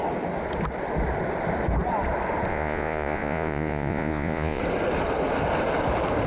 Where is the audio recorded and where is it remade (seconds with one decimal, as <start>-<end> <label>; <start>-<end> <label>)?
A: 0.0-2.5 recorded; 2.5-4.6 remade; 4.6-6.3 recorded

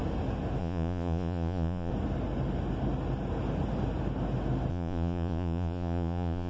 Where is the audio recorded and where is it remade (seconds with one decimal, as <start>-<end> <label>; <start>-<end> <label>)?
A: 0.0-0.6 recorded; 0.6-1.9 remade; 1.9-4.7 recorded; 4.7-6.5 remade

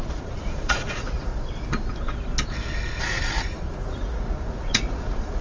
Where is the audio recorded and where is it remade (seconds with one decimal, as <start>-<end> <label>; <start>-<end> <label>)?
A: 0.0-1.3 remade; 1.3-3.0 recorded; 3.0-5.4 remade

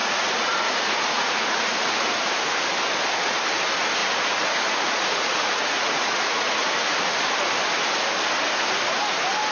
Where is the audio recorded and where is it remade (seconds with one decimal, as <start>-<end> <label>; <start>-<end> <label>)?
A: 0.0-2.3 remade; 2.3-4.0 recorded; 4.0-6.7 remade; 6.7-9.5 recorded